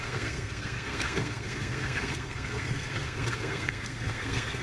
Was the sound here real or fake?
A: fake